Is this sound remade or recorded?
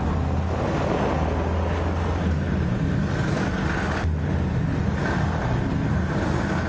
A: recorded